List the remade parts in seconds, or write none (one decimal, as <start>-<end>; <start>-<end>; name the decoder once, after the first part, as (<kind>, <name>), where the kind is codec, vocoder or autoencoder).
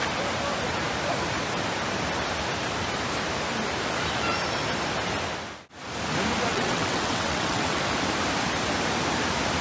6.5-7.8 (vocoder, WaveNeXt)